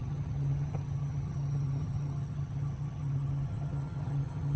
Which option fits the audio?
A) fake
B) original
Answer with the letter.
A